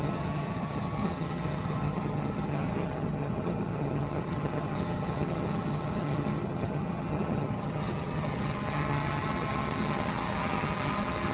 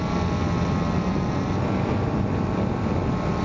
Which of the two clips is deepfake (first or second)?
first